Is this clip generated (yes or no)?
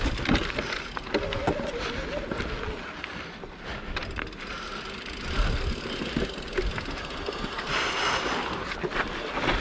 no